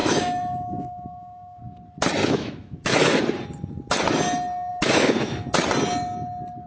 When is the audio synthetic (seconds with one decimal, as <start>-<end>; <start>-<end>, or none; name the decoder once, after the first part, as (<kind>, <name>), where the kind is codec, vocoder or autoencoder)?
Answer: 0.0-1.6 (autoencoder, DAC-VAE); 2.2-3.2; 4.7-5.4